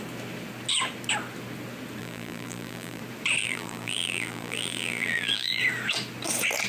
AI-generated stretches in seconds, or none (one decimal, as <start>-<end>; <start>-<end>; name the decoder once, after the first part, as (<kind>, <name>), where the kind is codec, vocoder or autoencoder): 2.0-3.0 (vocoder, BigVGAN v2); 3.4-5.6